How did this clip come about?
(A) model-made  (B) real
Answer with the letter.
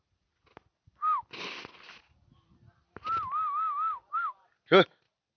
B